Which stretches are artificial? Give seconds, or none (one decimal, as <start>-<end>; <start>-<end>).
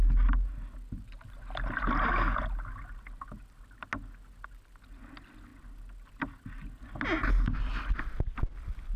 none